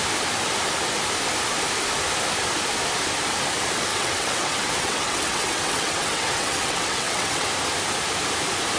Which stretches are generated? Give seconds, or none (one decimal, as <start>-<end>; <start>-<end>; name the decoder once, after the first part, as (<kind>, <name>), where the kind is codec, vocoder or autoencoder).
3.9-7.5 (vocoder, WaveNeXt)